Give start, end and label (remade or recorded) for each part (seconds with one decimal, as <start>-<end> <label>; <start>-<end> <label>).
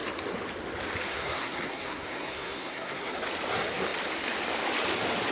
0.0-1.1 recorded; 1.1-3.1 remade; 3.1-5.3 recorded